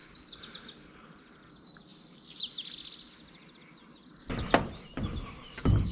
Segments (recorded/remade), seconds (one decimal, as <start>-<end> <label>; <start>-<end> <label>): 0.0-1.5 remade; 1.5-5.9 recorded